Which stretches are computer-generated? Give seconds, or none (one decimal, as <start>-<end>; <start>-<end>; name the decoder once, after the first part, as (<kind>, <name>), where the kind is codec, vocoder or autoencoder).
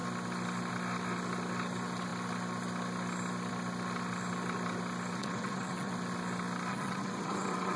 5.2-5.9 (vocoder, WaveNeXt); 6.7-7.8